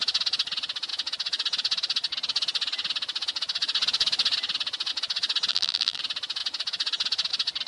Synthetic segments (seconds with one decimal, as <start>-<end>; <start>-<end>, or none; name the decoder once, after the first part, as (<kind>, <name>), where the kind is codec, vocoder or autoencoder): 5.5-6.0 (vocoder, BigVGAN v2)